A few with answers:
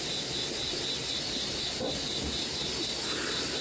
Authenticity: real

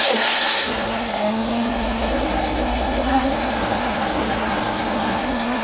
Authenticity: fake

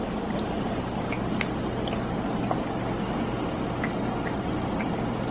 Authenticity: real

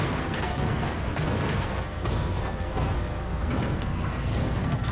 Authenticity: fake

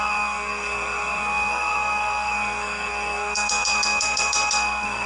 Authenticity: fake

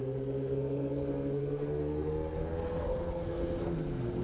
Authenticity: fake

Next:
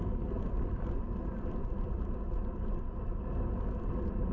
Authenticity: real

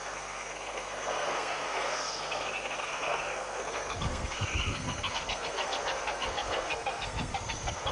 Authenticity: fake